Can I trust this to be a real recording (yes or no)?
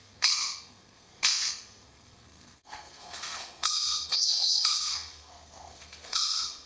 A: no